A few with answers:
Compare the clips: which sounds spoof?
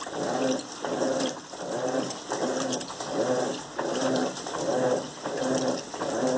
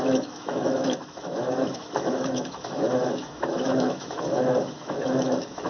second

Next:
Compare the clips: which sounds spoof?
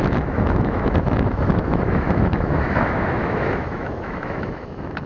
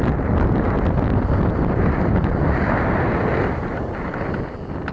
first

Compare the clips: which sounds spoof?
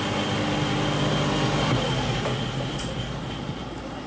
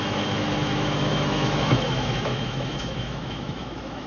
second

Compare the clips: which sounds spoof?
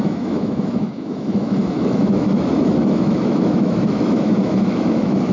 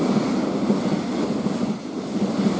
first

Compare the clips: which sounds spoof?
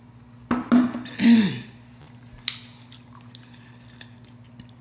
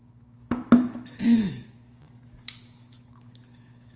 second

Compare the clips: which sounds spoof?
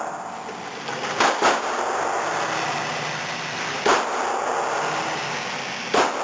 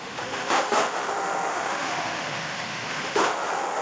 second